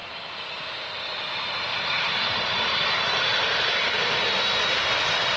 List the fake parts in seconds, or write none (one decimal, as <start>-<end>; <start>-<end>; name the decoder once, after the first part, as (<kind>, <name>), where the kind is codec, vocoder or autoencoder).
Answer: 1.7-3.9 (vocoder, BigVGAN v2)